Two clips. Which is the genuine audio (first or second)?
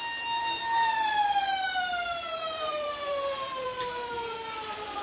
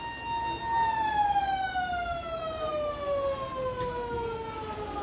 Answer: second